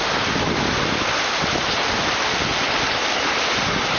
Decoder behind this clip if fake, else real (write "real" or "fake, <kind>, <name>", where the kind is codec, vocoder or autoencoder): real